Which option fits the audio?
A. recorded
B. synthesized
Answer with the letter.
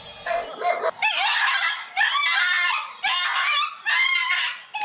A